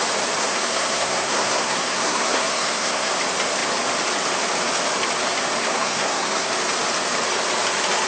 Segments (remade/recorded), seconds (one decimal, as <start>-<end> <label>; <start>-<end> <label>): 0.0-0.4 recorded; 0.4-3.1 remade; 3.1-5.6 recorded; 5.6-6.5 remade; 6.5-8.1 recorded